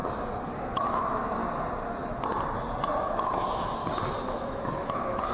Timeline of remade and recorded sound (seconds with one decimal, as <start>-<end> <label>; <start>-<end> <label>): 0.0-0.7 recorded; 0.7-1.4 remade; 1.4-3.0 recorded; 3.0-3.8 remade; 3.8-4.3 recorded; 4.3-5.3 remade